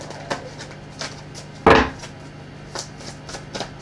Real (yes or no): yes